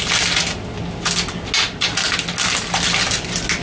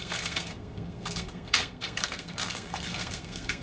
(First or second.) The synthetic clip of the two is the second